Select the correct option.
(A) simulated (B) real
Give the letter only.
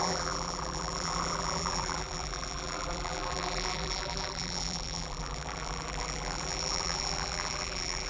A